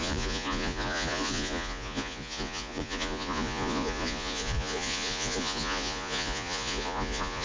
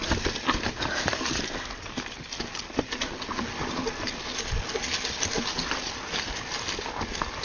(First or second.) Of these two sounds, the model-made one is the first